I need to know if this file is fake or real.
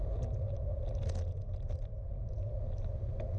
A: real